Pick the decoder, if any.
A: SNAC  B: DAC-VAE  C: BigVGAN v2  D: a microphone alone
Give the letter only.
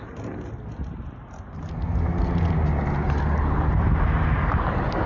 D